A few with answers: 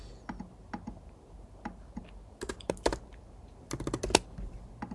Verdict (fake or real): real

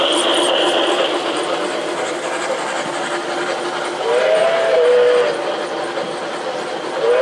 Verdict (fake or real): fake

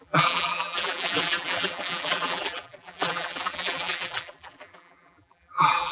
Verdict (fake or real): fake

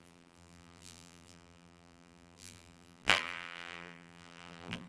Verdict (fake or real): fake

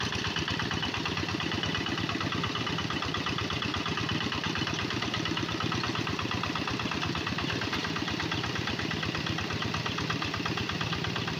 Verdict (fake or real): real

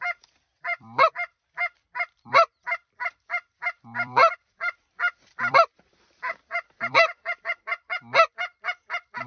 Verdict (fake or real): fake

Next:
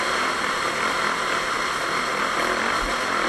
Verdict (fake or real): real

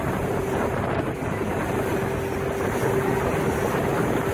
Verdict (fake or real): real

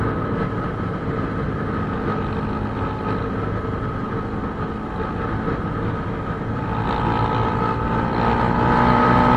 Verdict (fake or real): real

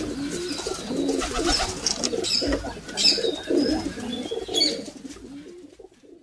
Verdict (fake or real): real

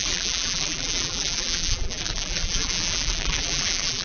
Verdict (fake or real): fake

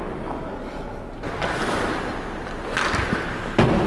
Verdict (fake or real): real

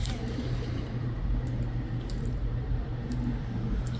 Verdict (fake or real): fake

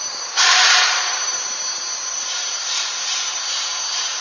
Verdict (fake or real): fake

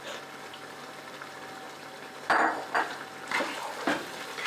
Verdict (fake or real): fake